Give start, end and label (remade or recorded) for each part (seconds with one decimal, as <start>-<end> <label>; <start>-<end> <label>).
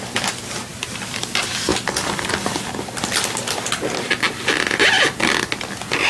0.0-0.7 recorded; 0.7-1.2 remade; 1.2-6.1 recorded